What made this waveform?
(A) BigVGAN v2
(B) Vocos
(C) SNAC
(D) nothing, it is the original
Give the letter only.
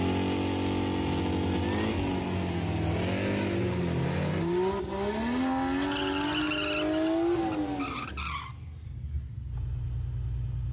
D